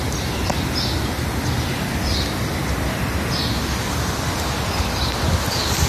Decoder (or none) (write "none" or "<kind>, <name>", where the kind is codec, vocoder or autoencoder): none